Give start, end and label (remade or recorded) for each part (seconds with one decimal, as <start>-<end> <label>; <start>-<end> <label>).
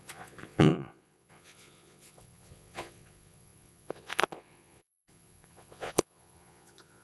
0.0-7.0 remade